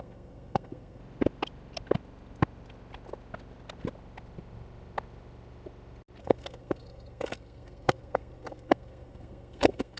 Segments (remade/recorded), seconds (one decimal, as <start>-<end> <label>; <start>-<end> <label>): 0.0-1.0 remade; 1.0-6.2 recorded; 6.2-10.0 remade